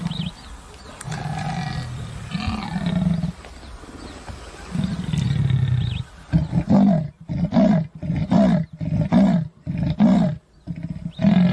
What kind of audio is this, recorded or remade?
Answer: recorded